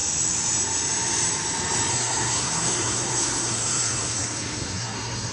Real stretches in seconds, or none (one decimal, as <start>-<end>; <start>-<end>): 0.0-1.9